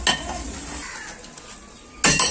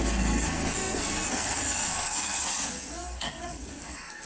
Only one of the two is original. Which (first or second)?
first